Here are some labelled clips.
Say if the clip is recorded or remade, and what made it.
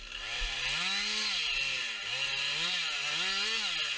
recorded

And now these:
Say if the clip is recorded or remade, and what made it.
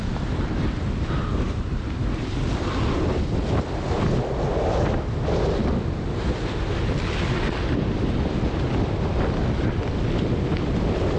recorded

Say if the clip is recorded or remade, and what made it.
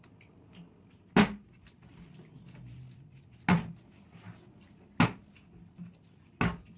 recorded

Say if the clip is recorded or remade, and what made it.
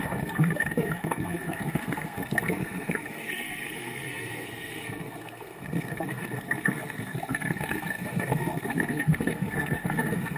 remade, codec, SNAC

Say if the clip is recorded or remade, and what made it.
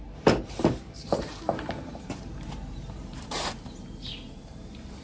remade, vocoder, BigVGAN v2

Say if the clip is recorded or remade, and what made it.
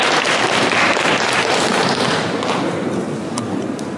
recorded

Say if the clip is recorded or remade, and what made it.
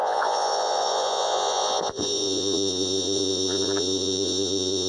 remade, vocoder, Vocos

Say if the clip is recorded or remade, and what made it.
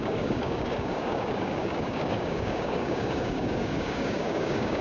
remade, codec, DAC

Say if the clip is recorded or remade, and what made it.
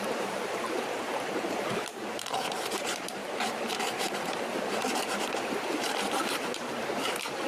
remade, vocoder, BigVGAN v2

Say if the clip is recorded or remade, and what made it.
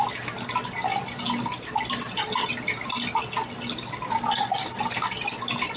recorded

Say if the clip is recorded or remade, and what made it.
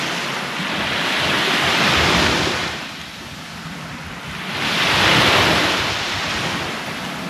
recorded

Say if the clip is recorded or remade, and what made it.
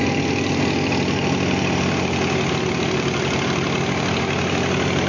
recorded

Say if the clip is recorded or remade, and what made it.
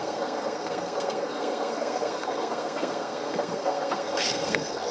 remade, codec, SNAC